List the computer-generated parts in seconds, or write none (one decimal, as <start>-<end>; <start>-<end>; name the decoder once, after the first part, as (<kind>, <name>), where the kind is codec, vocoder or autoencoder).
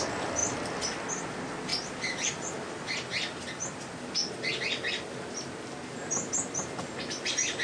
none